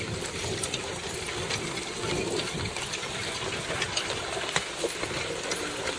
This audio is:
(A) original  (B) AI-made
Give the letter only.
A